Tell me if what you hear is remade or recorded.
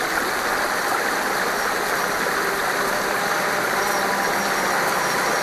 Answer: recorded